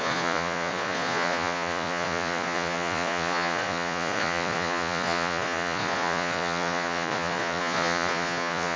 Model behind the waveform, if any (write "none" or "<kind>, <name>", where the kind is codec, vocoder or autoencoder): vocoder, Vocos